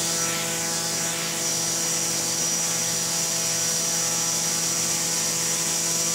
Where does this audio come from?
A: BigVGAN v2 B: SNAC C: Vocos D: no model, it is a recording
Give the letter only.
D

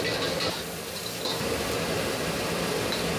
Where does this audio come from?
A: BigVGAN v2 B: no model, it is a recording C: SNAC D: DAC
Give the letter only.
A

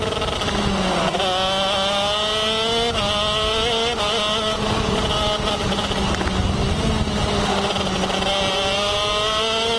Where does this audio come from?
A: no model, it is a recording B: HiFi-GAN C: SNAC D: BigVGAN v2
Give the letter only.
A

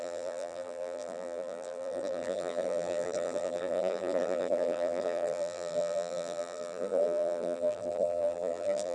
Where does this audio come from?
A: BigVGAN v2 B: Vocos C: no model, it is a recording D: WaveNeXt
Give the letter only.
A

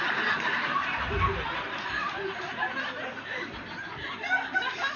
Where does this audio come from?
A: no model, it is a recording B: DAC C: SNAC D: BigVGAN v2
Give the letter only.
A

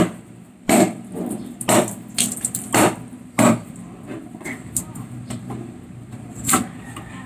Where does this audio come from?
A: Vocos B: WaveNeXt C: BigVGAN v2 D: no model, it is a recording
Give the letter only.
C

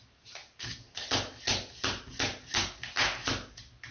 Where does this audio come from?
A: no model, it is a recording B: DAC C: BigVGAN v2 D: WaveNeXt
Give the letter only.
A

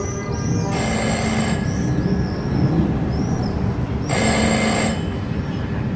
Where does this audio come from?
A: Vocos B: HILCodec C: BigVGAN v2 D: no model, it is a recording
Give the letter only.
D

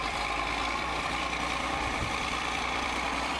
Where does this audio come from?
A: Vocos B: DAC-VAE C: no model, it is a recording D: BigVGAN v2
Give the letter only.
D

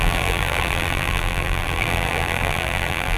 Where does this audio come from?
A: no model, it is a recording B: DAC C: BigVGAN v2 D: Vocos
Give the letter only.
C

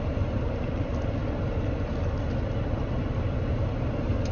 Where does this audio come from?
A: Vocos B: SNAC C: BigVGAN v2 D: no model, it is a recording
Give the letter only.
D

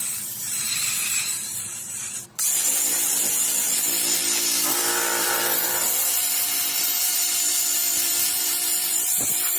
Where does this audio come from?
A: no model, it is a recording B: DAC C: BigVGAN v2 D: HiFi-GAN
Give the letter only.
C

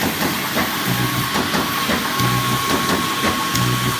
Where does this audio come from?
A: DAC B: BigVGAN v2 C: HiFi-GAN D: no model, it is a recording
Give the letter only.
D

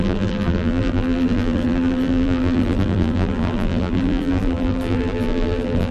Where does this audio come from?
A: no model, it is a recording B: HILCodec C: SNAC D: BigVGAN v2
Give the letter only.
D